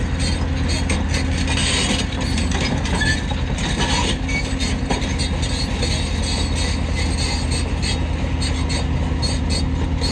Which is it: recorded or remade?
recorded